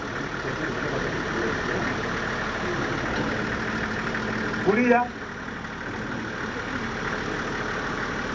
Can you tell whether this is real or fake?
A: real